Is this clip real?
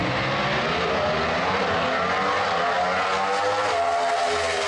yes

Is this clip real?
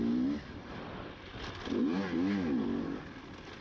yes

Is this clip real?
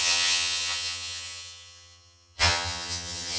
no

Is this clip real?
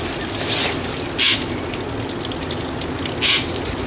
yes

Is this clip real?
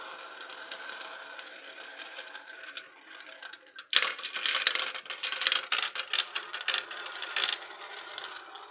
yes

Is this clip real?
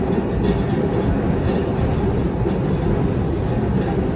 yes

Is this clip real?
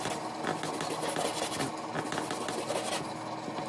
yes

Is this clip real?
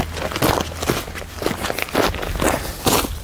yes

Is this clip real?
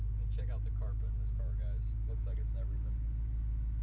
yes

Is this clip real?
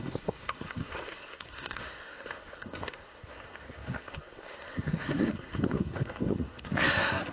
no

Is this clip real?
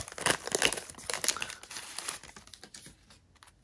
yes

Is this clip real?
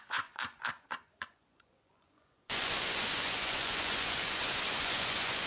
no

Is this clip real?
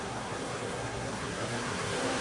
no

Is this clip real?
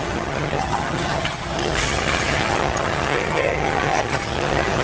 no